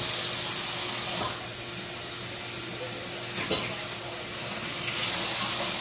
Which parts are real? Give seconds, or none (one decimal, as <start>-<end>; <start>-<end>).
0.0-5.8